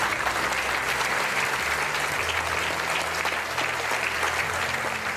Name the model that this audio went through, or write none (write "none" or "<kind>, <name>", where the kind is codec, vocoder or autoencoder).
none